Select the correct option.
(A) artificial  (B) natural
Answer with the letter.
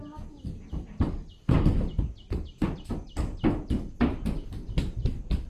B